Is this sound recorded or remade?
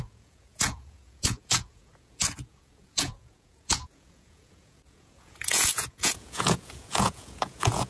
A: remade